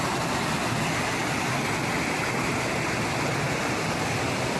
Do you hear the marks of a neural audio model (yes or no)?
no